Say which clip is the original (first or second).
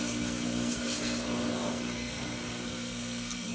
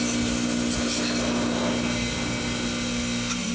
second